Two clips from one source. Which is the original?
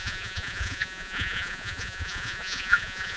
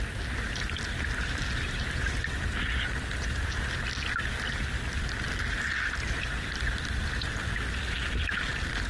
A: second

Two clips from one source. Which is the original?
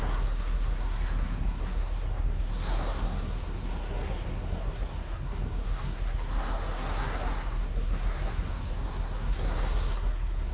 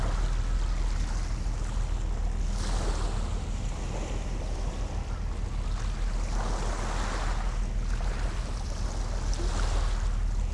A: second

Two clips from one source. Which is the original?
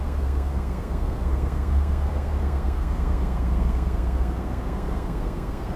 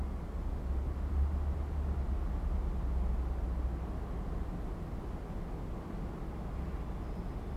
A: second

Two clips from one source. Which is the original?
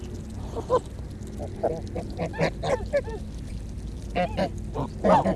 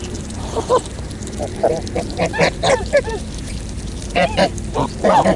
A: first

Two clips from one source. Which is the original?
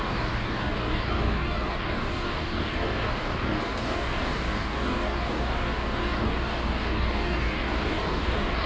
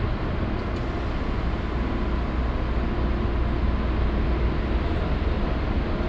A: second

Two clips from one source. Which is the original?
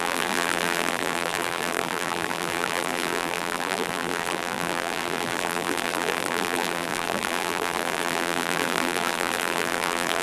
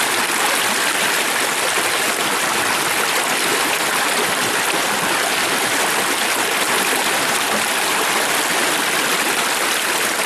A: second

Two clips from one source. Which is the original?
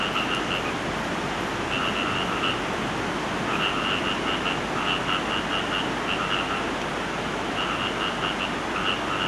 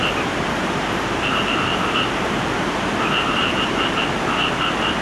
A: first